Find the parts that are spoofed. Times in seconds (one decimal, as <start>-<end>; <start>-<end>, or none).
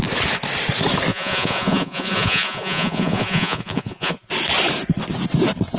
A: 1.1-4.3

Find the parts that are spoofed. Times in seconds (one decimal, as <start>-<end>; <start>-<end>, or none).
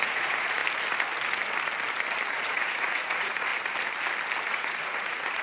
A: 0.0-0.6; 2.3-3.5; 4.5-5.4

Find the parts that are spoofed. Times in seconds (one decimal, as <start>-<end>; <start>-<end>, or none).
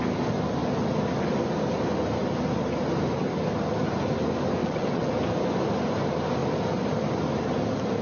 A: 4.6-5.1